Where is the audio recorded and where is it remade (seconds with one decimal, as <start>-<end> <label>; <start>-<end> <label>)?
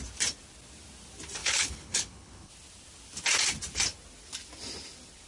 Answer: 0.0-1.4 recorded; 1.4-2.5 remade; 2.5-5.3 recorded